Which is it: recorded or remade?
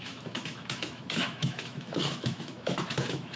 remade